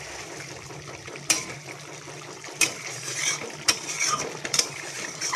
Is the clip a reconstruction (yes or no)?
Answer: yes